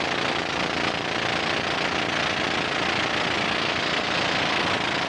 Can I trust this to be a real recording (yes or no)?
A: yes